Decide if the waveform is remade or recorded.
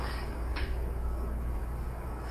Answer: remade